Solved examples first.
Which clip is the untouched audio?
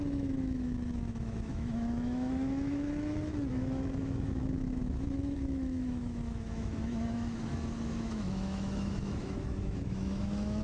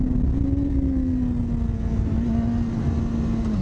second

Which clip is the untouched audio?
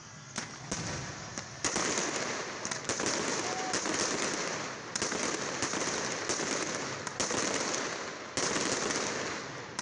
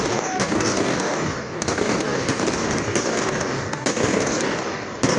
first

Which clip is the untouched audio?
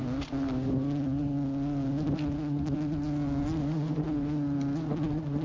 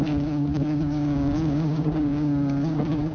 first